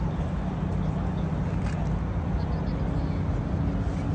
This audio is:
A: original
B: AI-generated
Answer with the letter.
A